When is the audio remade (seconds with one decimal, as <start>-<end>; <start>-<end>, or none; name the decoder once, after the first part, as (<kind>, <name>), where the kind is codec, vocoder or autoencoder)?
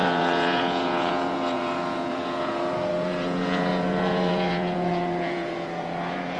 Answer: 0.0-6.4 (vocoder, Vocos)